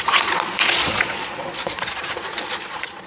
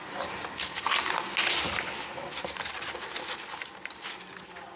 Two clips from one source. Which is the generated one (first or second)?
first